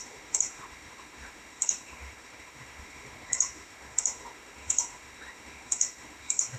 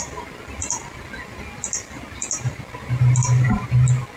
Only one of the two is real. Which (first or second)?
second